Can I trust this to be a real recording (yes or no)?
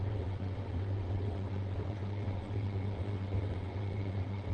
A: no